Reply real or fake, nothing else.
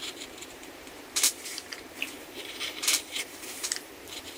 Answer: fake